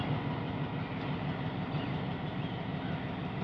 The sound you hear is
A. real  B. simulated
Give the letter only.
A